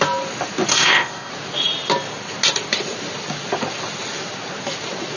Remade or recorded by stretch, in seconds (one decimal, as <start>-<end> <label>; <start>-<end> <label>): 0.0-0.7 recorded; 0.7-1.3 remade; 1.3-5.2 recorded